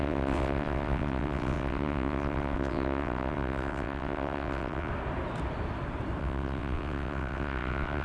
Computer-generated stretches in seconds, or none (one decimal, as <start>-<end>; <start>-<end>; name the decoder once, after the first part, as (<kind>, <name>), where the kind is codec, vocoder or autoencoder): 0.0-4.9 (vocoder, WaveNeXt); 6.2-8.0